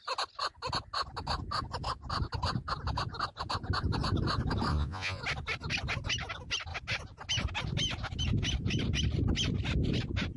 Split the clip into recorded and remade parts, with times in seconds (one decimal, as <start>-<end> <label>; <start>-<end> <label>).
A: 0.0-4.7 recorded; 4.7-5.2 remade; 5.2-10.4 recorded